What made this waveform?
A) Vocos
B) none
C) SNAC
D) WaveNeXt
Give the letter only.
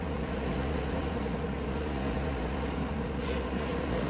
A